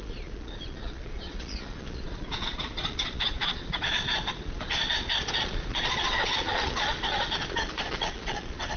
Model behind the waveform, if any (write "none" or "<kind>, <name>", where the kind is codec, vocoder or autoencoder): vocoder, Vocos